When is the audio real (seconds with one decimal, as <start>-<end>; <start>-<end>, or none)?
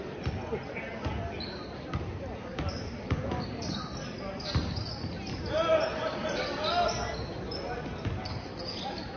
3.2-4.8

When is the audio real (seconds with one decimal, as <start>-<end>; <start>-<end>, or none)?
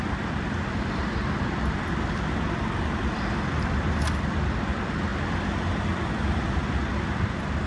5.1-5.9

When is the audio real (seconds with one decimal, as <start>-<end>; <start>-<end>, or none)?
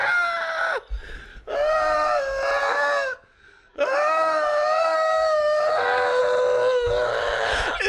0.0-1.3; 2.2-2.6; 6.2-7.9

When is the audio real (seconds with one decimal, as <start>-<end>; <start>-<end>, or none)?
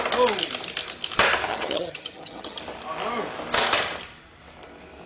0.0-1.5; 2.6-5.1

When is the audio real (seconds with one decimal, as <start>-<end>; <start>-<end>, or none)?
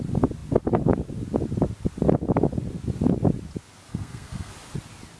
0.0-3.9; 4.5-5.2